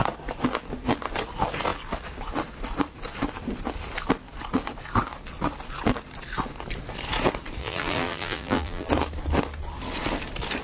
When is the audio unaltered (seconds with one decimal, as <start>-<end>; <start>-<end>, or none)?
0.0-7.6; 8.9-10.6